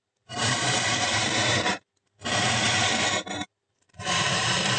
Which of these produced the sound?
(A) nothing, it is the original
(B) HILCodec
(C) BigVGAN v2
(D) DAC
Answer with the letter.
C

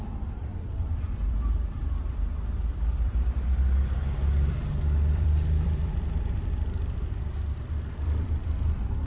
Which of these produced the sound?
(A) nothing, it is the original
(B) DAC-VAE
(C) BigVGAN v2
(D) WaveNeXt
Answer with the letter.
C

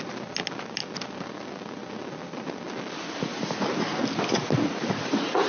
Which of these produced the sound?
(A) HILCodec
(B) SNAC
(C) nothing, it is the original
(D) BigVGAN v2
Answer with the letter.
C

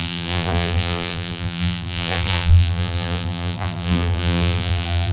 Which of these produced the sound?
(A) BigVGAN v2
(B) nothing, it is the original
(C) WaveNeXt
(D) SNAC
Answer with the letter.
A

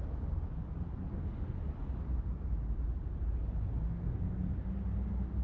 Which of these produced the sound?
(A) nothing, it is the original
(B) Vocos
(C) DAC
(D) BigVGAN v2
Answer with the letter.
A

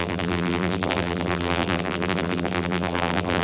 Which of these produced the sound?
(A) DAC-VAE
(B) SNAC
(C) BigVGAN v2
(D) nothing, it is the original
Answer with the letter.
C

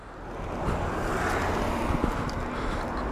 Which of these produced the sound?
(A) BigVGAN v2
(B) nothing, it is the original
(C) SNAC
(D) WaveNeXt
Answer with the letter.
B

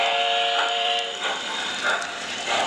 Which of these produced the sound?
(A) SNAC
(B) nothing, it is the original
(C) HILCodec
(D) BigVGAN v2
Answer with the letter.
D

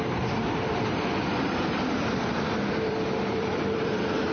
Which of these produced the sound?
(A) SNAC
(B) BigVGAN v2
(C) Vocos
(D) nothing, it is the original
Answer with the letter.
B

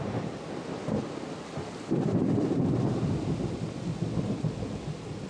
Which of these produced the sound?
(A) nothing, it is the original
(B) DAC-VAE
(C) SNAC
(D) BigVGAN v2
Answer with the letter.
A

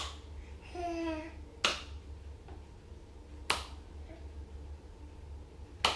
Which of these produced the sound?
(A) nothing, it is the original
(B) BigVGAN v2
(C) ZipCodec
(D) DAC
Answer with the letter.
A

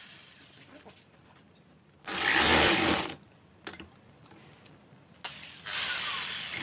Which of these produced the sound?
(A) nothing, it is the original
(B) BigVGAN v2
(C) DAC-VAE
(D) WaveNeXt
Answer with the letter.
B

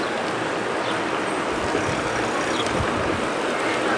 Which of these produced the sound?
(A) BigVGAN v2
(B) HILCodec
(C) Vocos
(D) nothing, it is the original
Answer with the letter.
D